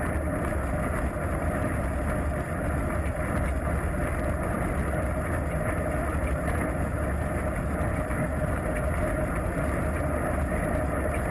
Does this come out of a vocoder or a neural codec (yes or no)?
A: no